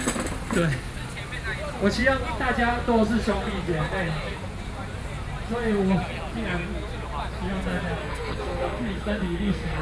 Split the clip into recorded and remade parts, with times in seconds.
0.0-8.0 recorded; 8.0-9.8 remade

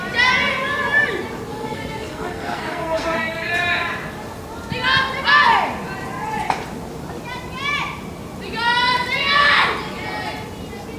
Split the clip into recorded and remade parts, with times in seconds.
0.0-1.5 recorded; 1.5-3.5 remade; 3.5-11.0 recorded

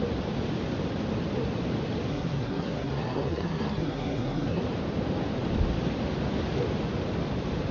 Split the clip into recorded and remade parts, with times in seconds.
0.0-2.1 recorded; 2.1-4.6 remade; 4.6-7.7 recorded

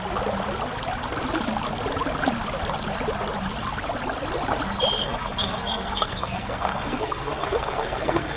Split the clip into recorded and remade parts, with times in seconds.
0.0-5.0 recorded; 5.0-8.4 remade

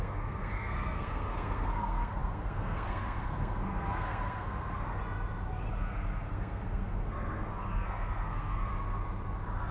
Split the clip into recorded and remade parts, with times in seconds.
0.0-5.0 remade; 5.0-5.7 recorded; 5.7-8.7 remade; 8.7-9.7 recorded

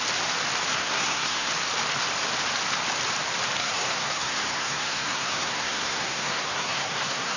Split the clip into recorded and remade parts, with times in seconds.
0.0-0.7 recorded; 0.7-1.5 remade; 1.5-3.6 recorded; 3.6-7.4 remade

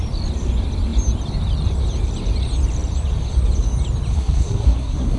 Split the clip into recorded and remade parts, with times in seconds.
0.0-4.1 recorded; 4.1-5.2 remade